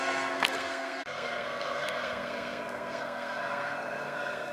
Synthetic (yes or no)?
yes